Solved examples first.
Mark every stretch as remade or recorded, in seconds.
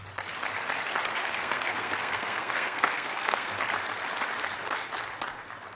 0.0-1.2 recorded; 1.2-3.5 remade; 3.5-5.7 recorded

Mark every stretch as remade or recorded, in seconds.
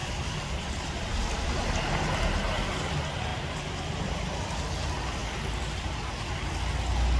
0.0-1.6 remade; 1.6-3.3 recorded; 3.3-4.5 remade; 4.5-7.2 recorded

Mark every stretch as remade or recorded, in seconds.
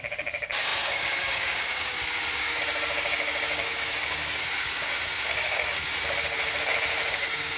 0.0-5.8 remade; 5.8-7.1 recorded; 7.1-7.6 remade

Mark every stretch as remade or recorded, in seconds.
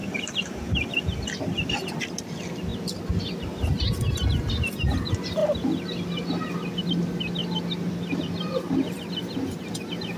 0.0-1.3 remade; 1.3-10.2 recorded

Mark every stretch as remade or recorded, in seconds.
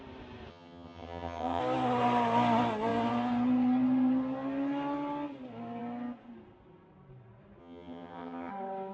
0.0-0.5 recorded; 0.5-1.6 remade; 1.6-7.6 recorded; 7.6-8.5 remade; 8.5-8.9 recorded